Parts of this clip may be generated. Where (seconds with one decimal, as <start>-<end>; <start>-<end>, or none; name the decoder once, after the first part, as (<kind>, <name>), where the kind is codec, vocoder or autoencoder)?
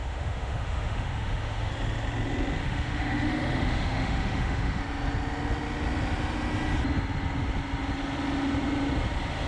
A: 0.0-1.7 (autoencoder, DAC-VAE); 2.6-4.8